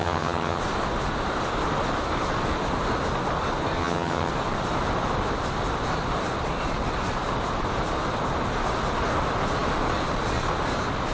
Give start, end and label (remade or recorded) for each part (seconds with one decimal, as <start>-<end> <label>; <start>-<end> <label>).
0.0-0.6 remade; 0.6-3.8 recorded; 3.8-4.3 remade; 4.3-11.1 recorded